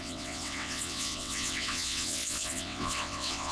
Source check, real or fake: fake